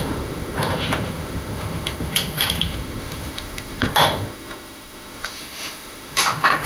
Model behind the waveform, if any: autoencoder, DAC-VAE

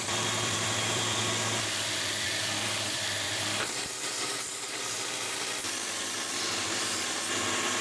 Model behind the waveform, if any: vocoder, BigVGAN v2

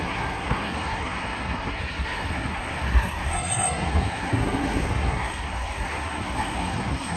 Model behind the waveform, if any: codec, SNAC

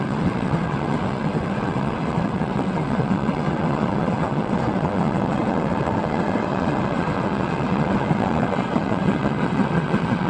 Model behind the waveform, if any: vocoder, WaveNeXt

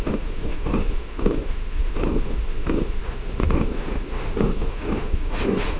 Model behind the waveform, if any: autoencoder, DAC-VAE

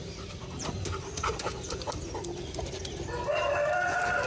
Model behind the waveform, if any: vocoder, BigVGAN v2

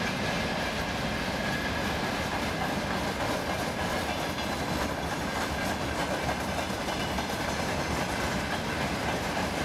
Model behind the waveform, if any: none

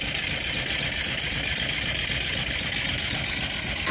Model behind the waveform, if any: none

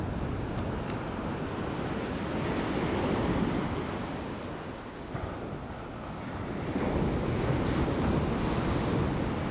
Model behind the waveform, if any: none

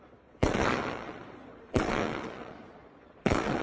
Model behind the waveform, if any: vocoder, Vocos